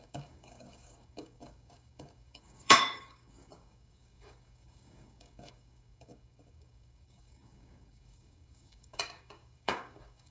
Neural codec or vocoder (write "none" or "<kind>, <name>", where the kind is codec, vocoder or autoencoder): codec, DAC